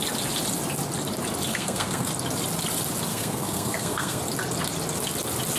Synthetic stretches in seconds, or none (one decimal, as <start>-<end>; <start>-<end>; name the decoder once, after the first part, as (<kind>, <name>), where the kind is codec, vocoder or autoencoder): 1.5-2.1 (codec, SNAC); 3.1-4.2